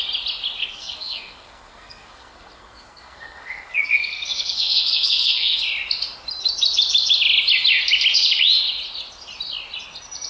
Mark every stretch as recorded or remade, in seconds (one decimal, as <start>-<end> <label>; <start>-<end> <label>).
0.0-0.6 recorded; 0.6-5.6 remade; 5.6-10.3 recorded